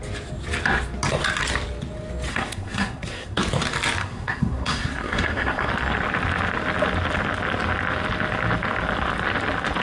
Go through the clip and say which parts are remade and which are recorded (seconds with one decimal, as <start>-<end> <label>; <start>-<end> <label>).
0.0-2.3 recorded; 2.3-3.4 remade; 3.4-4.0 recorded; 4.0-5.7 remade; 5.7-9.8 recorded